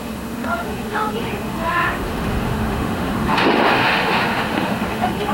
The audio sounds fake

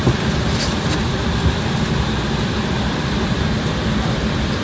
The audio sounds fake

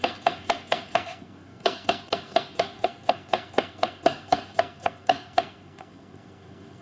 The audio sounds fake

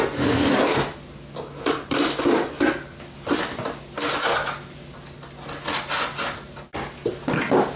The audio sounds real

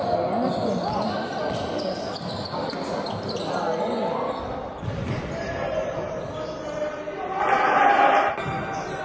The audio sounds real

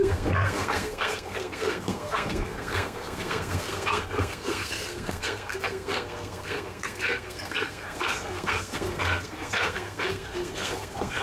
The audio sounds fake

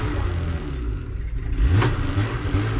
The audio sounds real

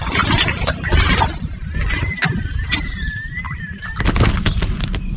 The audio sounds real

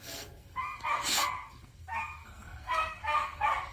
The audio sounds fake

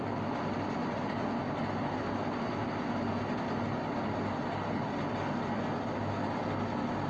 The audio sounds real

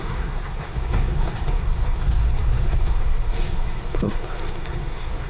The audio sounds fake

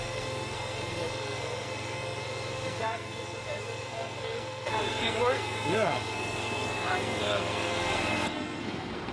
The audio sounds fake